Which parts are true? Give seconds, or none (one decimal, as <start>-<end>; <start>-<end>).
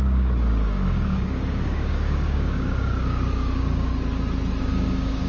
3.9-4.6